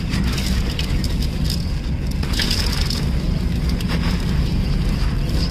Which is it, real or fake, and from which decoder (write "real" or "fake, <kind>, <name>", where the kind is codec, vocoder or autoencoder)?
real